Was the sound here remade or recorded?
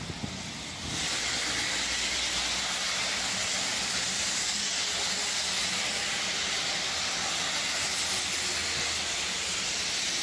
recorded